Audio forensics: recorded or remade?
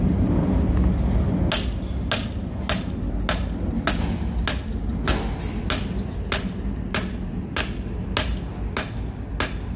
recorded